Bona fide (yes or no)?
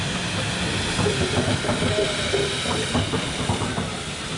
yes